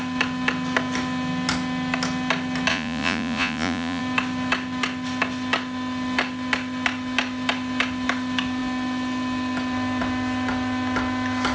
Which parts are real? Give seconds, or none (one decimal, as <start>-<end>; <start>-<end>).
0.0-2.7; 4.0-11.5